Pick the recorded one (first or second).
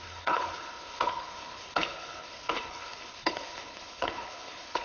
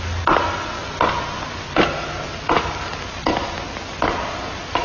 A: second